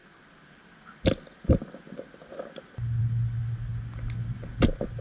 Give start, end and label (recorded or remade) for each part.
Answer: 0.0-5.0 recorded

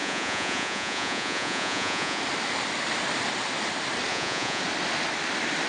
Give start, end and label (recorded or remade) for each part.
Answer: 0.0-2.2 remade; 2.2-4.1 recorded; 4.1-4.6 remade; 4.6-5.7 recorded

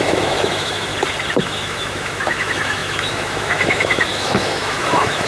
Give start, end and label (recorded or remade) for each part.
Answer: 0.0-0.9 remade; 0.9-1.4 recorded; 1.4-5.3 remade